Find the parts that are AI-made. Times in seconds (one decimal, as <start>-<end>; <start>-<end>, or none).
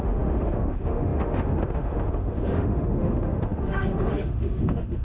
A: 0.0-5.0